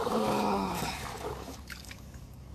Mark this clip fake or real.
fake